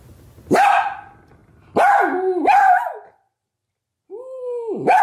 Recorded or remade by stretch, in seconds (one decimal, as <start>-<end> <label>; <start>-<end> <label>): 0.0-5.0 recorded